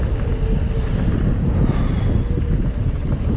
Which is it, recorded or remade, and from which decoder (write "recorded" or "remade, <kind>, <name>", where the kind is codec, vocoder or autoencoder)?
recorded